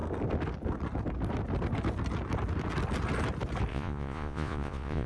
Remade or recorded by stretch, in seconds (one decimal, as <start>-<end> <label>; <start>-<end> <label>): 0.0-3.7 recorded; 3.7-5.1 remade